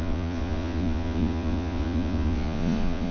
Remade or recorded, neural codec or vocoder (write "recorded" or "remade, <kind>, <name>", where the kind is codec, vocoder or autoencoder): remade, vocoder, Vocos